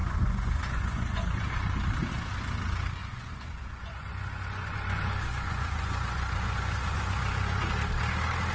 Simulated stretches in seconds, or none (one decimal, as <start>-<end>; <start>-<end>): 0.0-1.2; 3.0-7.7